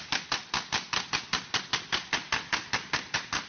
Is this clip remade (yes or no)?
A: no